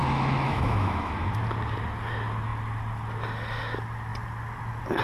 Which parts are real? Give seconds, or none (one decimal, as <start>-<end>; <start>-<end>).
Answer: 1.3-5.0